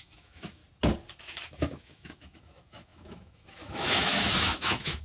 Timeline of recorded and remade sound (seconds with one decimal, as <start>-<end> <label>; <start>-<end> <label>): 0.0-0.6 remade; 0.6-1.2 recorded; 1.2-5.0 remade